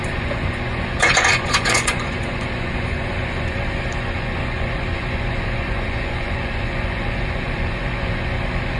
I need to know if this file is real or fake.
fake